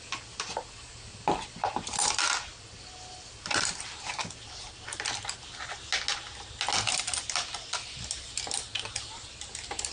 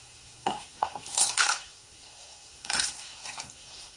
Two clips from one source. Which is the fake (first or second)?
second